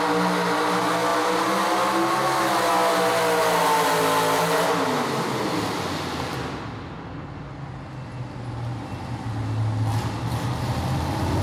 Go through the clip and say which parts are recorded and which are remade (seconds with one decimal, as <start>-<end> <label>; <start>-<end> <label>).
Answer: 0.0-11.4 recorded

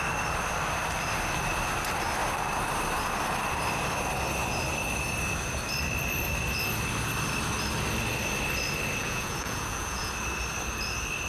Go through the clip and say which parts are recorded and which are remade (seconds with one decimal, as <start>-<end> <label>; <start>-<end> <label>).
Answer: 0.0-9.0 recorded; 9.0-10.1 remade; 10.1-11.3 recorded